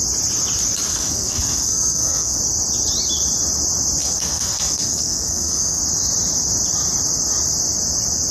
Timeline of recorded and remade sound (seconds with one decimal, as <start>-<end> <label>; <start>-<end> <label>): 0.0-0.9 recorded; 0.9-2.4 remade; 2.4-4.0 recorded; 4.0-5.8 remade; 5.8-8.3 recorded